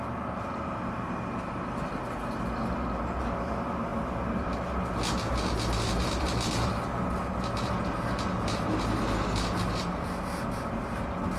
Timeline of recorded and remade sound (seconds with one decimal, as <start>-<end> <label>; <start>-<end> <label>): 0.0-11.4 recorded